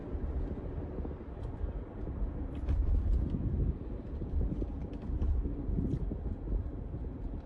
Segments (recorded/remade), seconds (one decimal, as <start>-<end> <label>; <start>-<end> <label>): 0.0-3.7 remade; 3.7-4.8 recorded; 4.8-6.5 remade; 6.5-7.5 recorded